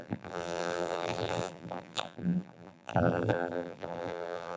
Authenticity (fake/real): fake